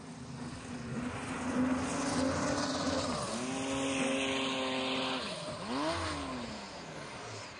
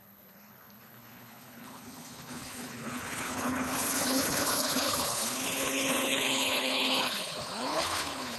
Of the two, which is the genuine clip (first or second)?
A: first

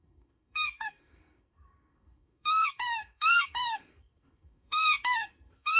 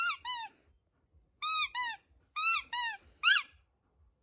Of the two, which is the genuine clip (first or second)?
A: second